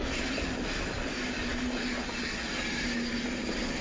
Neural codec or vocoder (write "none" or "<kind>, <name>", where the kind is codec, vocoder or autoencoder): none